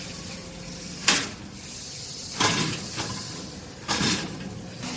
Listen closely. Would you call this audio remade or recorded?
recorded